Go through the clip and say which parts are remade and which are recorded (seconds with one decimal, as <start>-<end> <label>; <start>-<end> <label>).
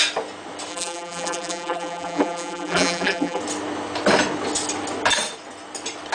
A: 0.0-0.7 recorded; 0.7-3.4 remade; 3.4-6.1 recorded